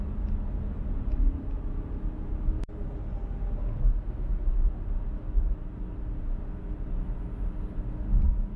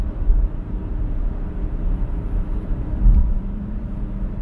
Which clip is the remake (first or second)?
second